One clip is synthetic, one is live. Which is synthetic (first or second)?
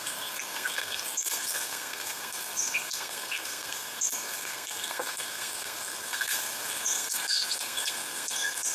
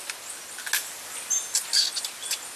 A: first